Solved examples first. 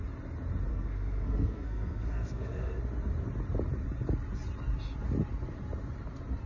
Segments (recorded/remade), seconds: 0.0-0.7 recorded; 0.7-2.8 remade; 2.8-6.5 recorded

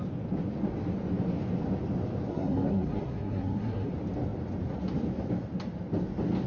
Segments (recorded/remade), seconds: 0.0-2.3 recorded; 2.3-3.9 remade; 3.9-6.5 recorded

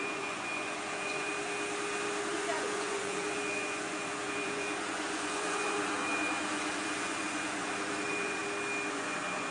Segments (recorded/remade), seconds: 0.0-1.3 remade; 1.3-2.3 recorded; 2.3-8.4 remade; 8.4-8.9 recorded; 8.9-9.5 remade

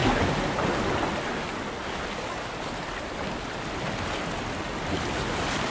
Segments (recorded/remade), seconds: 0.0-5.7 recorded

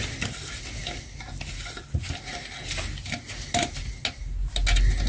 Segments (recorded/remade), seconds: 0.0-5.1 recorded

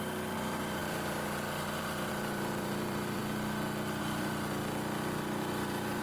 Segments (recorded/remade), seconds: 0.0-3.2 remade; 3.2-4.0 recorded; 4.0-4.6 remade; 4.6-5.4 recorded; 5.4-6.0 remade

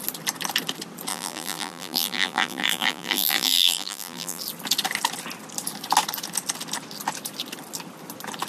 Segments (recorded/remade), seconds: 0.0-1.1 recorded; 1.1-4.4 remade; 4.4-8.5 recorded

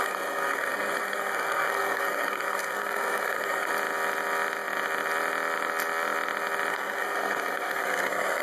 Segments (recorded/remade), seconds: 0.0-3.7 remade; 3.7-6.7 recorded; 6.7-8.4 remade